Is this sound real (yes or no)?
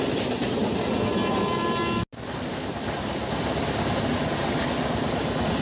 yes